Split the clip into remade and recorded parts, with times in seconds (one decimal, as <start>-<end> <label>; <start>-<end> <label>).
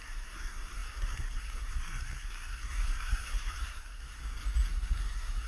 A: 0.0-4.2 remade; 4.2-4.7 recorded; 4.7-5.5 remade